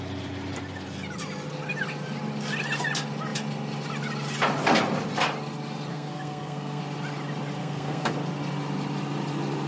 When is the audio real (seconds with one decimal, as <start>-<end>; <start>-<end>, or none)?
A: 0.0-5.9; 6.8-7.6; 8.1-9.7